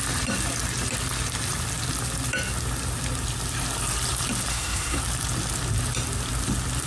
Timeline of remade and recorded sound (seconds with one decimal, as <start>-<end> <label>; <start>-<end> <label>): 0.0-4.5 recorded; 4.5-5.0 remade; 5.0-6.9 recorded